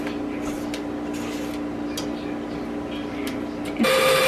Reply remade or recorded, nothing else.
recorded